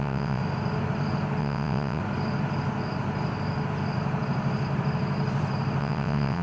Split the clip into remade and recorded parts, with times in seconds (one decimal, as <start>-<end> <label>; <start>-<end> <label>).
0.0-0.4 remade; 0.4-1.4 recorded; 1.4-2.0 remade; 2.0-5.8 recorded; 5.8-6.4 remade